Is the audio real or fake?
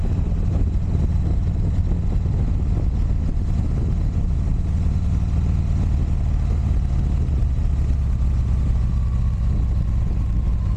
real